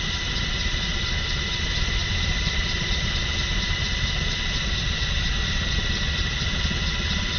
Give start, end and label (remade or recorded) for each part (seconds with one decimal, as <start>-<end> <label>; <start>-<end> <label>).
0.0-7.4 recorded